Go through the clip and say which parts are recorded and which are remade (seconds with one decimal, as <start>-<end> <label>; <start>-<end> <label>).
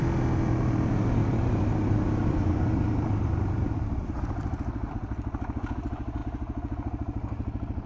0.0-1.2 recorded; 1.2-4.9 remade; 4.9-7.9 recorded